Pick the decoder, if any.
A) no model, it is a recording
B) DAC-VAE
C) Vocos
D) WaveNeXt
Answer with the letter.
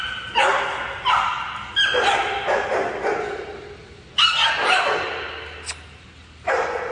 A